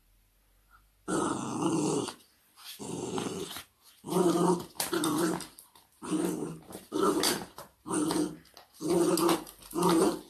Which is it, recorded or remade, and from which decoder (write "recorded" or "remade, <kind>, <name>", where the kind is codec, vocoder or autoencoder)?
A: recorded